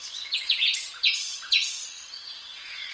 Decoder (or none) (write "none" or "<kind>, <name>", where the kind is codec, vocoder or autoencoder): vocoder, WaveNeXt